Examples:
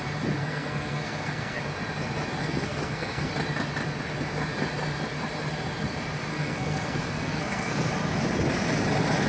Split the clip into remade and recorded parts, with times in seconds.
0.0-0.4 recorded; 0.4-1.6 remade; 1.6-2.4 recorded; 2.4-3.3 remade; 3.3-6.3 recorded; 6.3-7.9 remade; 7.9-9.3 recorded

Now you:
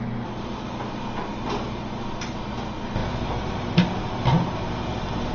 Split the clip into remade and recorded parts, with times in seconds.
0.0-5.3 recorded

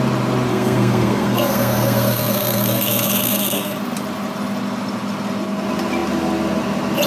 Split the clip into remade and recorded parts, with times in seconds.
0.0-0.5 recorded; 0.5-3.8 remade; 3.8-7.1 recorded

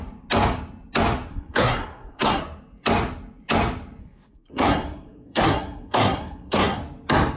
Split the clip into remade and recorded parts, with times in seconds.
0.0-1.3 recorded; 1.3-2.4 remade; 2.4-4.0 recorded; 4.0-6.8 remade; 6.8-7.4 recorded

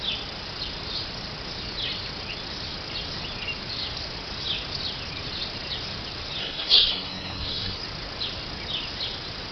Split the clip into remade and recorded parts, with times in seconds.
0.0-6.4 recorded; 6.4-7.8 remade; 7.8-9.5 recorded

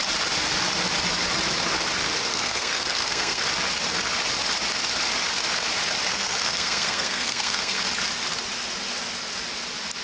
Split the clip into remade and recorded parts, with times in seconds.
0.0-2.3 recorded; 2.3-3.4 remade; 3.4-6.1 recorded; 6.1-7.8 remade; 7.8-10.0 recorded